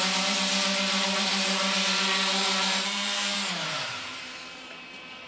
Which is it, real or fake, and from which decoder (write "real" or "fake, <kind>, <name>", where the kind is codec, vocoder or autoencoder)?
fake, vocoder, BigVGAN v2